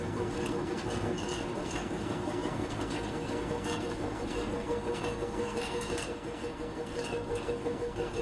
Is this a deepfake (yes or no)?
yes